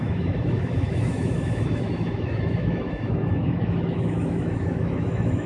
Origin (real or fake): fake